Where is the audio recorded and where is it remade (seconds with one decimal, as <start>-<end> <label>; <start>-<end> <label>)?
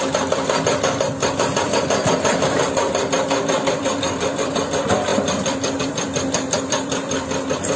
0.0-7.8 remade